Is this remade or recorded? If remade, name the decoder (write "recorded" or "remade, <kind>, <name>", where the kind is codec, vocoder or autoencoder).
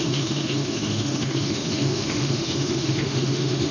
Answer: remade, autoencoder, DAC-VAE